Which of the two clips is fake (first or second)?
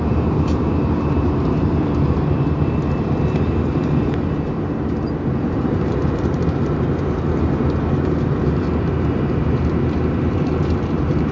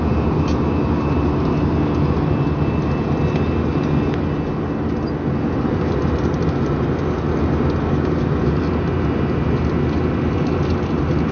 first